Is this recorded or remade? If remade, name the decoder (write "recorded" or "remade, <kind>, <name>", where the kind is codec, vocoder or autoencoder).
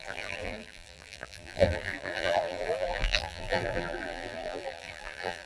remade, vocoder, BigVGAN v2